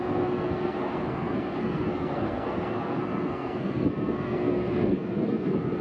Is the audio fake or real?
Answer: fake